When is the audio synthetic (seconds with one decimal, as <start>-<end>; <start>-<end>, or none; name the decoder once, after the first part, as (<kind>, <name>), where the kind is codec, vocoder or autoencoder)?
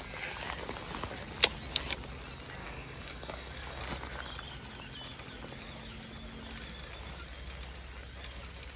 2.6-3.8 (codec, DAC)